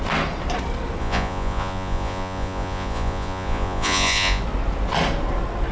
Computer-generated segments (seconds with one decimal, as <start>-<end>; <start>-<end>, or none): 1.0-4.4